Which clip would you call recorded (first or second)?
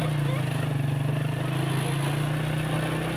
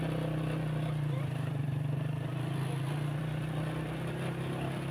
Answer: first